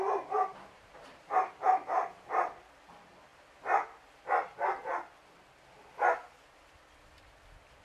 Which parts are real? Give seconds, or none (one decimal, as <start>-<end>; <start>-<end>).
0.0-0.5; 2.8-3.3; 4.1-7.8

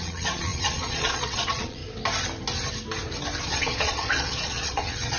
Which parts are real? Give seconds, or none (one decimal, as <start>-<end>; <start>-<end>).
1.8-3.4

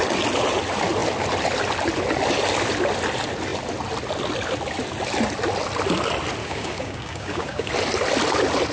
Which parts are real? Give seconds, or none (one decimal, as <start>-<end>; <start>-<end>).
0.0-6.4; 7.7-8.7

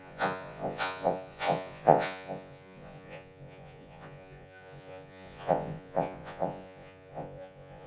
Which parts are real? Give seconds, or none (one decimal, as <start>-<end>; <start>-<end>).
none